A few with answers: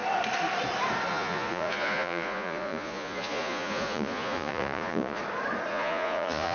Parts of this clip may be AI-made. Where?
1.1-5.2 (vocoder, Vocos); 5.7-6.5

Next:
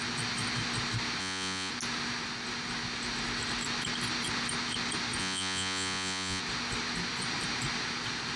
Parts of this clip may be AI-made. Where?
1.2-1.7 (vocoder, Vocos); 5.2-6.4

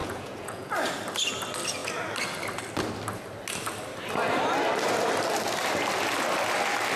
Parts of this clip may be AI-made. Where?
0.0-0.7 (vocoder, Vocos)

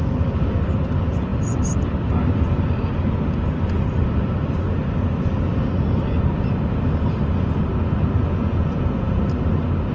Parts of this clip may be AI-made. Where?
8.2-9.2 (vocoder, Vocos)

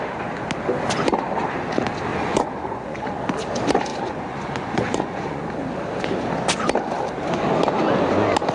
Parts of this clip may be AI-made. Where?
2.1-3.2 (vocoder, Vocos); 3.9-5.4

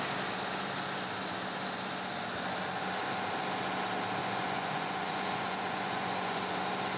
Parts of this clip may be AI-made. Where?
4.2-6.6 (vocoder, Vocos)